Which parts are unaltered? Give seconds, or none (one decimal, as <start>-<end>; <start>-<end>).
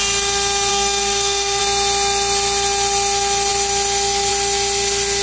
0.0-0.7; 1.6-5.2